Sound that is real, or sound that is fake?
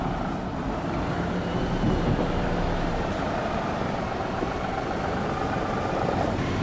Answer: fake